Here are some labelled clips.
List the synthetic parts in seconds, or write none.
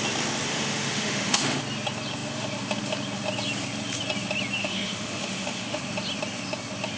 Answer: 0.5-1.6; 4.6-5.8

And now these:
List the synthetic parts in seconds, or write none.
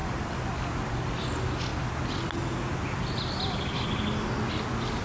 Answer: none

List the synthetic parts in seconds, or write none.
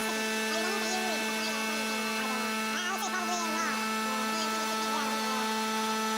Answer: none